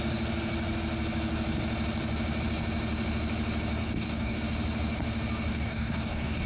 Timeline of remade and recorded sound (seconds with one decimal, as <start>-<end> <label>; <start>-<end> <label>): 0.0-3.8 recorded; 3.8-4.4 remade; 4.4-5.5 recorded; 5.5-6.5 remade